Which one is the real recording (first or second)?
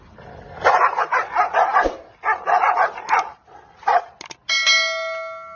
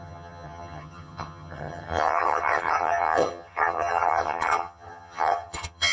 first